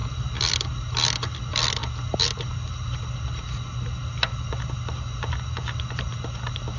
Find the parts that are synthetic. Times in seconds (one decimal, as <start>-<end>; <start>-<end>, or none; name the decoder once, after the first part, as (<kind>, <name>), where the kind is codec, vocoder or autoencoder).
none